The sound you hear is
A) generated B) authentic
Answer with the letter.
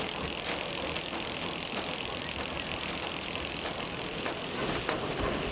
B